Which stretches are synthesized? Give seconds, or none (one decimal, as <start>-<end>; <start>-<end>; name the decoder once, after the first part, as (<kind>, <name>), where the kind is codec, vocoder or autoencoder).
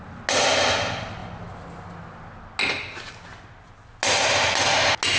none